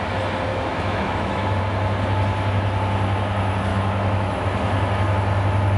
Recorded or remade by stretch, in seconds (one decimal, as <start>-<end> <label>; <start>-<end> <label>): 0.0-0.5 recorded; 0.5-1.6 remade; 1.6-3.7 recorded; 3.7-4.4 remade; 4.4-5.8 recorded